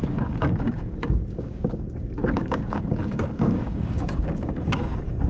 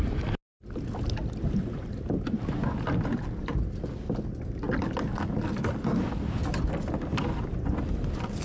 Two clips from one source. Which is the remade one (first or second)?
first